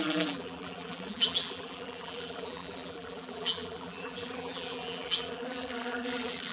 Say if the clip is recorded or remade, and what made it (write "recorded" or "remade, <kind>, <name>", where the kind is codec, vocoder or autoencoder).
remade, vocoder, BigVGAN v2